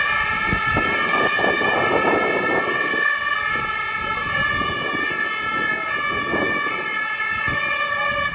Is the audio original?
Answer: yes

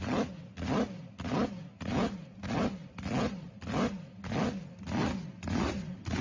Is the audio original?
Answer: yes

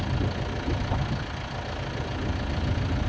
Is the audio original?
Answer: yes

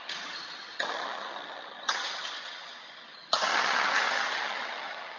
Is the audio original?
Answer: no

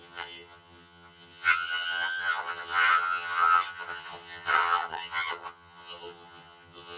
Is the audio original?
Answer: no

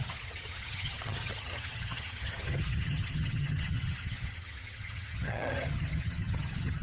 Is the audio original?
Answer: no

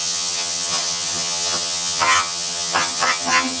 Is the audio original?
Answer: no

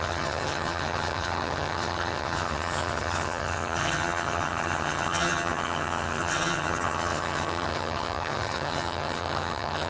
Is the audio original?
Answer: no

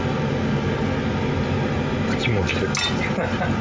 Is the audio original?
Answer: yes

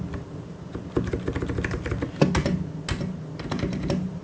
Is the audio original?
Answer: yes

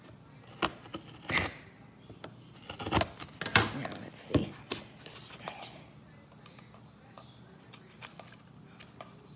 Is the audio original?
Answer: yes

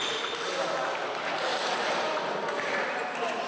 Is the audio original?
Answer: yes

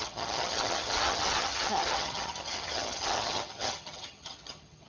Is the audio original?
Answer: no